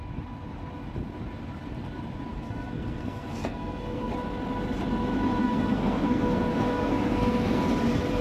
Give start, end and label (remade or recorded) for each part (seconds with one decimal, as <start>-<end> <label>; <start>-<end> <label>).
0.0-2.3 recorded; 2.3-4.1 remade; 4.1-5.4 recorded; 5.4-7.7 remade; 7.7-8.2 recorded